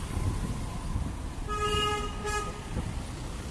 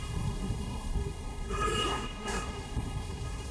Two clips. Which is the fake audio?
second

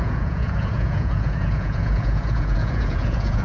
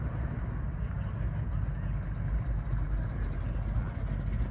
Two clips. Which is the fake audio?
first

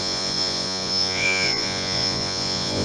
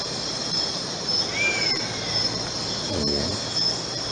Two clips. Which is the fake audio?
first